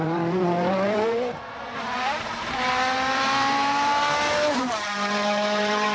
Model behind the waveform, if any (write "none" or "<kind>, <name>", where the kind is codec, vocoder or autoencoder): vocoder, BigVGAN v2